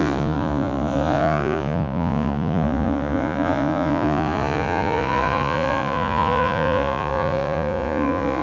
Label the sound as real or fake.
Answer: fake